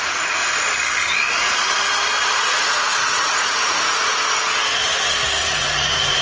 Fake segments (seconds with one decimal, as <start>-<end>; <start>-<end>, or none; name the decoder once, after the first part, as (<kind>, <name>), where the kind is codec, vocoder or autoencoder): 0.0-0.4 (vocoder, Vocos); 2.2-4.1; 5.4-6.2